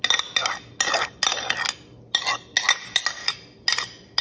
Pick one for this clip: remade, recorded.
recorded